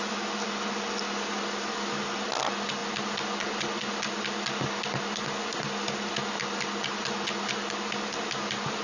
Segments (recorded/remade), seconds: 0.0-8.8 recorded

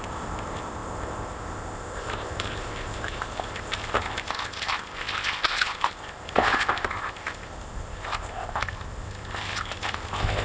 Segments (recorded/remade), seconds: 0.0-10.4 remade

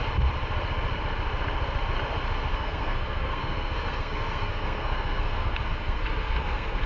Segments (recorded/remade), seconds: 0.0-2.5 recorded; 2.5-6.9 remade

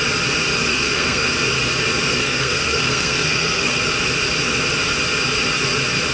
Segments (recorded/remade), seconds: 0.0-0.7 recorded; 0.7-1.3 remade; 1.3-2.2 recorded; 2.2-3.8 remade; 3.8-6.1 recorded